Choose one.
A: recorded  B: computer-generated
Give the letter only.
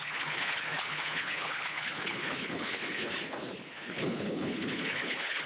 B